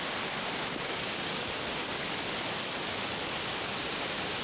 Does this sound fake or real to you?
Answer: real